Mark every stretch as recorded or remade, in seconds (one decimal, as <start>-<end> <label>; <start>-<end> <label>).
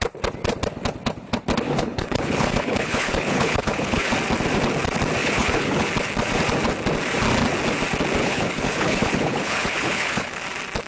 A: 0.0-1.8 recorded; 1.8-4.1 remade; 4.1-5.2 recorded; 5.2-5.9 remade; 5.9-8.2 recorded; 8.2-10.4 remade; 10.4-10.9 recorded